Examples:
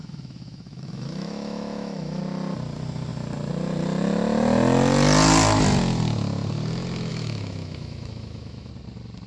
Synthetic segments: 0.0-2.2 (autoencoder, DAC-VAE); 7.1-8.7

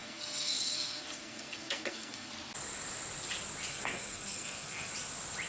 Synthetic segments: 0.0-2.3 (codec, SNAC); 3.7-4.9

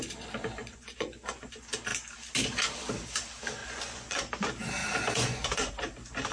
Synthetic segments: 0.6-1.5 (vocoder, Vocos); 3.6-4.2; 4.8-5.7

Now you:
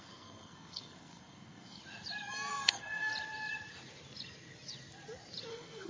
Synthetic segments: 0.0-1.8 (codec, SNAC); 2.5-3.1; 5.5-5.9